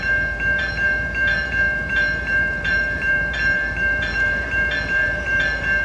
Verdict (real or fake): fake